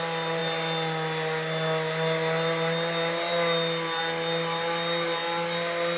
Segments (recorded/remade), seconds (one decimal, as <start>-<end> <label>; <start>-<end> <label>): 0.0-6.0 recorded